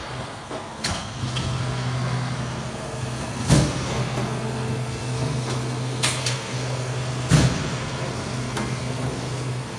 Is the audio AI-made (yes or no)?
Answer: yes